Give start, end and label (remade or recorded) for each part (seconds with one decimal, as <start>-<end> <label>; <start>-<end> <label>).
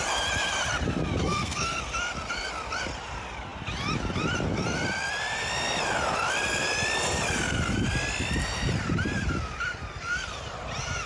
0.0-1.2 recorded; 1.2-1.8 remade; 1.8-11.1 recorded